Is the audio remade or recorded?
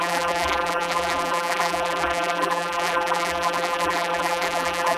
remade